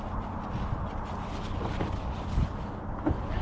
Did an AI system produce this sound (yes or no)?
no